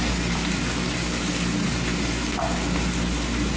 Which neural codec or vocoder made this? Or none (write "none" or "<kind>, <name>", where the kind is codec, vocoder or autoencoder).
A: none